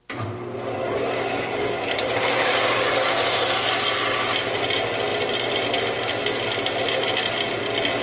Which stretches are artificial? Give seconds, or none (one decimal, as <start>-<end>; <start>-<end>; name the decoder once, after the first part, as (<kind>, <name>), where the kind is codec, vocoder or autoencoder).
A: 0.8-3.1 (codec, DAC)